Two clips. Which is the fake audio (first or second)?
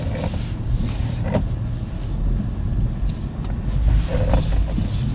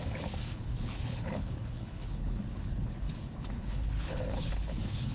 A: second